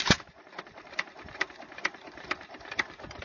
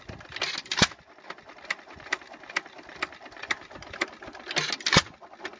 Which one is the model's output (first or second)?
first